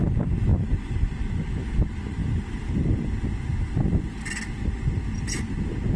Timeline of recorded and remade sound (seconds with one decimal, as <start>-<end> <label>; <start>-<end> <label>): 0.0-6.0 recorded